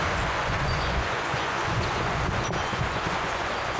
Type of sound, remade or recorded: remade